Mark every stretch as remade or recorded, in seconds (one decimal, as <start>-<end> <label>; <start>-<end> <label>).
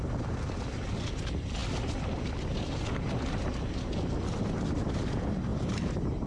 0.0-5.5 recorded; 5.5-6.3 remade